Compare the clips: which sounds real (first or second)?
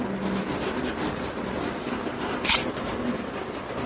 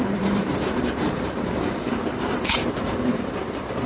first